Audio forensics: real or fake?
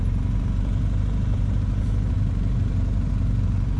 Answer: real